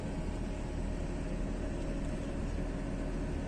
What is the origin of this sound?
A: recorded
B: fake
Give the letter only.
A